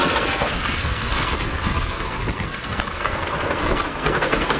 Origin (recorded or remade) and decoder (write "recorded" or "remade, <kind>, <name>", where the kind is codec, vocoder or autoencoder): remade, codec, SNAC